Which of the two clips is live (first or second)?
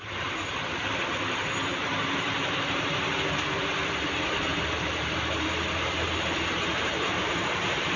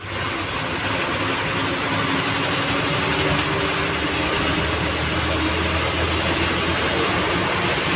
second